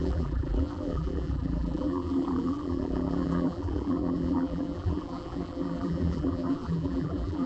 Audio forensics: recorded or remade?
remade